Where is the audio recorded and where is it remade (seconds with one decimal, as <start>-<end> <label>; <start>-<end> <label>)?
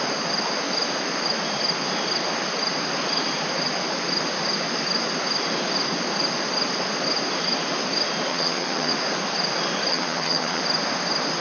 0.0-8.3 recorded; 8.3-8.9 remade; 8.9-9.9 recorded; 9.9-10.6 remade; 10.6-11.4 recorded